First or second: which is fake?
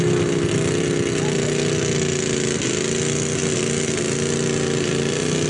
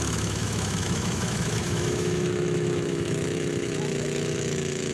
second